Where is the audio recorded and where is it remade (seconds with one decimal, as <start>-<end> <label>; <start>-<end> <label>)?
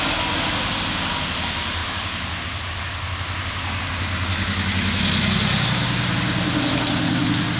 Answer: 0.0-1.8 recorded; 1.8-2.4 remade; 2.4-4.3 recorded; 4.3-5.3 remade; 5.3-7.6 recorded